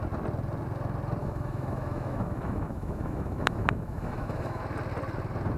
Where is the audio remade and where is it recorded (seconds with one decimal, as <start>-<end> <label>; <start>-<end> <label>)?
0.0-1.2 recorded; 1.2-4.6 remade; 4.6-5.6 recorded